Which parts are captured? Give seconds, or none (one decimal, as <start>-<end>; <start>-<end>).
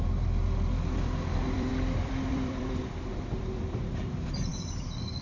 none